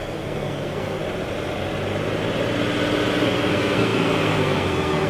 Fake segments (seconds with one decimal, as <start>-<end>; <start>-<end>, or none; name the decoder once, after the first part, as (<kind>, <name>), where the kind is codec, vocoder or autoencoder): 0.0-1.0 (codec, SNAC); 3.2-5.1